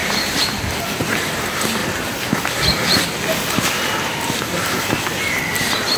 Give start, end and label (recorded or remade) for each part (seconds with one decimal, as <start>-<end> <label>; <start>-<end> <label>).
0.0-1.8 remade; 1.8-4.8 recorded; 4.8-6.0 remade